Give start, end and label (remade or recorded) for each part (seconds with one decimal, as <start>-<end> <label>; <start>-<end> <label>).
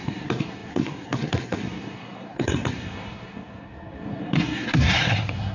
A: 0.0-5.5 remade